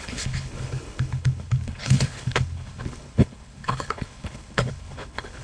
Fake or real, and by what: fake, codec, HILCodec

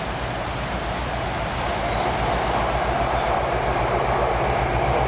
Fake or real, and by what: fake, vocoder, BigVGAN v2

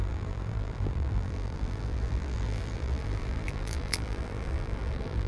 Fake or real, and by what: fake, vocoder, BigVGAN v2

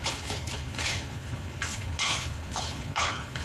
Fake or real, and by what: fake, codec, HILCodec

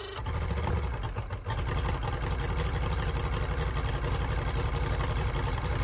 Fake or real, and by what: real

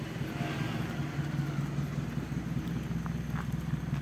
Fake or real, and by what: real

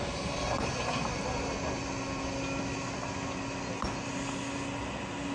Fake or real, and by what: real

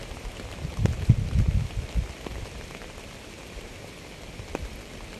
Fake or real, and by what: real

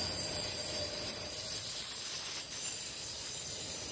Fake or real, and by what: fake, vocoder, BigVGAN v2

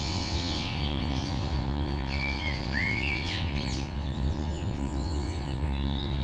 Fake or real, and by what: fake, vocoder, WaveNeXt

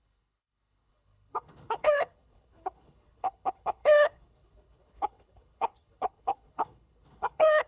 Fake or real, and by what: fake, codec, HILCodec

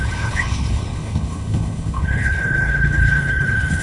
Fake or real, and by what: fake, codec, HILCodec